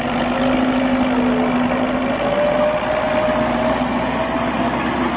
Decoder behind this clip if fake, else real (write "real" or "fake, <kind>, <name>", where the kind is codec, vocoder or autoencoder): real